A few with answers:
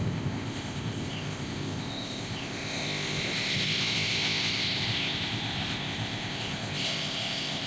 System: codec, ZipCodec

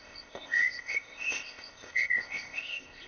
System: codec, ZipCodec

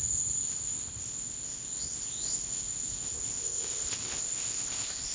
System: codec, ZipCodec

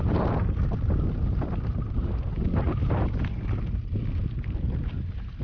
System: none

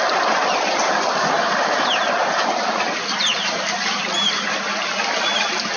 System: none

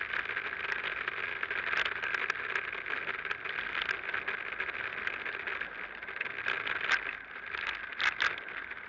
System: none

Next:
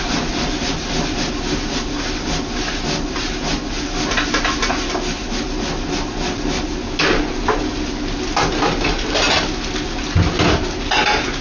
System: none